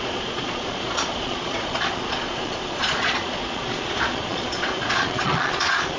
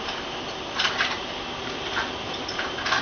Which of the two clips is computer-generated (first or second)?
first